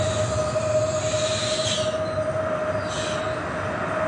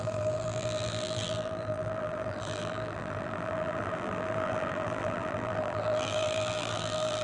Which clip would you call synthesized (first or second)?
second